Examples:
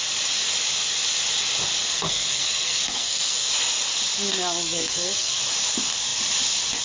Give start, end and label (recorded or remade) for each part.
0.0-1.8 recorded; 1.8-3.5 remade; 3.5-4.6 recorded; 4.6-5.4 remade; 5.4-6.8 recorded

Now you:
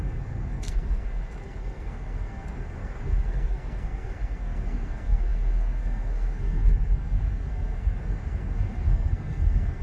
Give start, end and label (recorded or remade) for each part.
0.0-9.8 remade